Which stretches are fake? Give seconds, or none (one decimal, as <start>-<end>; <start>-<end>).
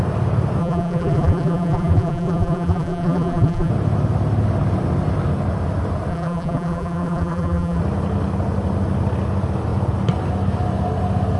0.6-3.7; 6.1-7.8